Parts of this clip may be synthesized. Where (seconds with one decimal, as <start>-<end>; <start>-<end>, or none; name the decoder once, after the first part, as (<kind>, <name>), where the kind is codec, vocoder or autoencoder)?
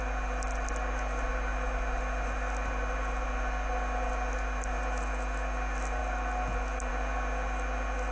none